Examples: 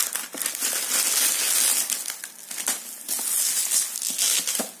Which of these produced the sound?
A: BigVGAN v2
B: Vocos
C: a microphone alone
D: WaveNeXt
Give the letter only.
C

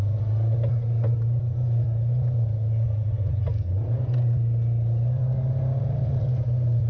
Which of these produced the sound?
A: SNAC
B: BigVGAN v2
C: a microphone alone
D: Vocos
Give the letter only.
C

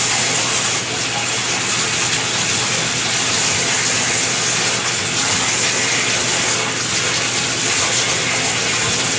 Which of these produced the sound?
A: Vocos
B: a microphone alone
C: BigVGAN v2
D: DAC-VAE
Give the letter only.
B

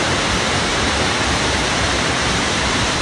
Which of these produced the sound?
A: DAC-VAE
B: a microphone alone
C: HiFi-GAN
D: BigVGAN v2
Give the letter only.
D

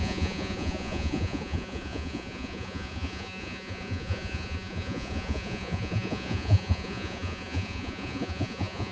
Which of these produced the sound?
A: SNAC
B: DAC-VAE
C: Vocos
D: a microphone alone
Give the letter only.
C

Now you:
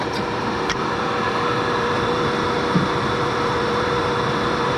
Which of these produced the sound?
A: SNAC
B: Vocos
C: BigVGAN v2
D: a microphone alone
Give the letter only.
C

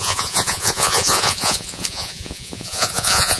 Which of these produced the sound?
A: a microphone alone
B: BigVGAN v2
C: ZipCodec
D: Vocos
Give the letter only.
D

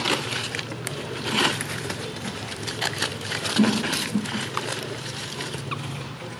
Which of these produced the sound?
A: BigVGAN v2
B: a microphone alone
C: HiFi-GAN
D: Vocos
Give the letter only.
A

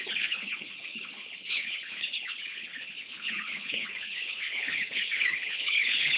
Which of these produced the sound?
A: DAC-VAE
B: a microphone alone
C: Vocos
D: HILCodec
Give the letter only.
D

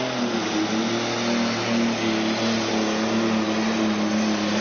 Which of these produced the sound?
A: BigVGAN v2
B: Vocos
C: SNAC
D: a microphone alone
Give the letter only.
D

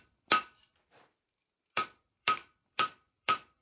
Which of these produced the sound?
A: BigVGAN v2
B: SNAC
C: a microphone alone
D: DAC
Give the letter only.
A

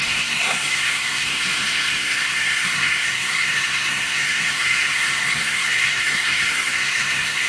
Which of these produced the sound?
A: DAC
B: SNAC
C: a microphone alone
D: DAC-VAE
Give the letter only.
B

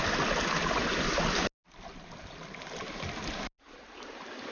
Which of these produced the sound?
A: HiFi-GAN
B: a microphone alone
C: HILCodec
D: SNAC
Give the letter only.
B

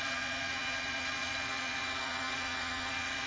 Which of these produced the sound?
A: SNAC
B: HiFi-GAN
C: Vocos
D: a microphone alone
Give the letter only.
C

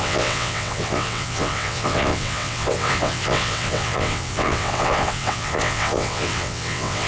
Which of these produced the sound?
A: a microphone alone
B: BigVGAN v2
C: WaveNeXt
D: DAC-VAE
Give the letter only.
C